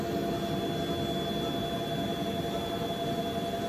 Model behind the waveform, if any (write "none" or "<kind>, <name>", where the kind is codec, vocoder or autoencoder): none